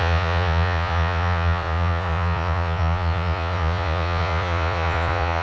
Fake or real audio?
fake